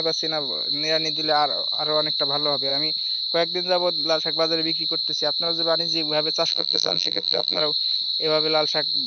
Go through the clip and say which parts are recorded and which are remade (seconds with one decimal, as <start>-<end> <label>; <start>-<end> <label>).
0.0-6.5 recorded; 6.5-7.6 remade; 7.6-9.1 recorded